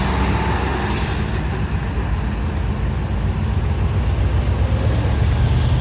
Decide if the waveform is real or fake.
real